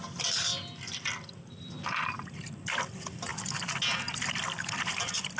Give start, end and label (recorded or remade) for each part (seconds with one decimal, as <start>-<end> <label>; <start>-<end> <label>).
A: 0.0-0.5 recorded; 0.5-1.6 remade; 1.6-5.4 recorded